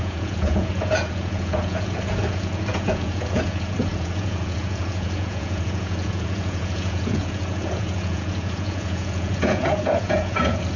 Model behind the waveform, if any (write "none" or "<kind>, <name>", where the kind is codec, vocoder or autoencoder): vocoder, Vocos